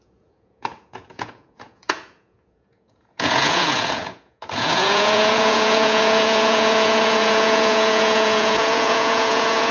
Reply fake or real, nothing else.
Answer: fake